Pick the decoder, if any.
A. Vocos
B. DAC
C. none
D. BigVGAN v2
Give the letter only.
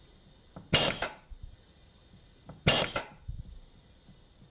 C